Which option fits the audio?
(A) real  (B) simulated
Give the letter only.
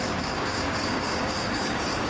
B